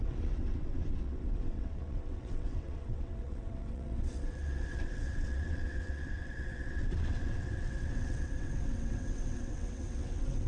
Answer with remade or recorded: remade